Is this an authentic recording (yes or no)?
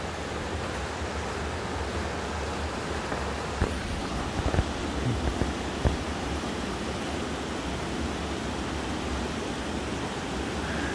yes